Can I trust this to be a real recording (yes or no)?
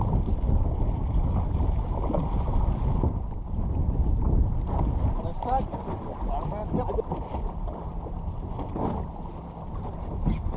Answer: yes